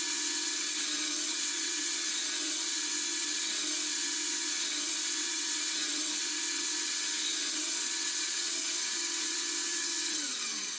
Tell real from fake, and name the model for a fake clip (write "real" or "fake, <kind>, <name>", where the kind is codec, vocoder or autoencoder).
fake, vocoder, WaveNeXt